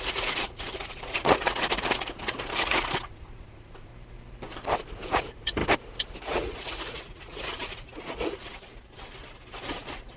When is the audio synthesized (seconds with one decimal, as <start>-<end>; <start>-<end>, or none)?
0.0-3.9; 5.0-5.6; 6.2-8.7

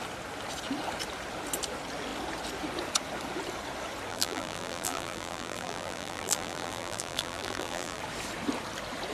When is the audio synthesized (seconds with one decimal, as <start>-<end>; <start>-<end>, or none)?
4.1-8.0

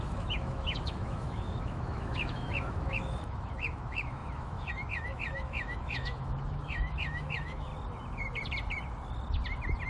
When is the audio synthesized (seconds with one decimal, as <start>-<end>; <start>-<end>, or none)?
0.0-7.7